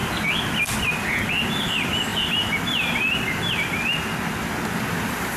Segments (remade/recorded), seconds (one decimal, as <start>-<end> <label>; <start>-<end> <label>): 0.0-5.4 recorded

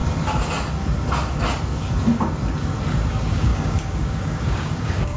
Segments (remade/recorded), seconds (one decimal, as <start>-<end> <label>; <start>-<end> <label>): 0.0-3.1 recorded; 3.1-5.2 remade

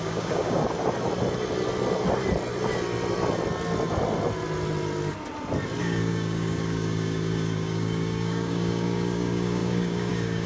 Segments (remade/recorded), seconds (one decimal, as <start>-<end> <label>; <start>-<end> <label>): 0.0-0.6 remade; 0.6-5.8 recorded; 5.8-10.5 remade

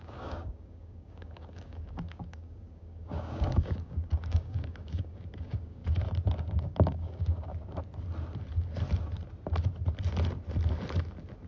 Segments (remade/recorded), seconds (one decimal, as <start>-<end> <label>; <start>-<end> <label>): 0.0-5.8 remade; 5.8-6.4 recorded; 6.4-7.5 remade; 7.5-11.5 recorded

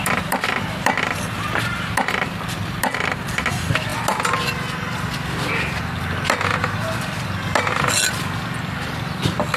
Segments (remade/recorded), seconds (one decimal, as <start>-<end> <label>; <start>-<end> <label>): 0.0-9.6 recorded